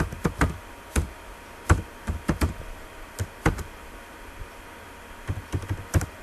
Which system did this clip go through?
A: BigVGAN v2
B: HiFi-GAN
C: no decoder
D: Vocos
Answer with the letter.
C